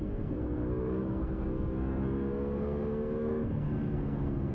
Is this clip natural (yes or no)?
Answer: no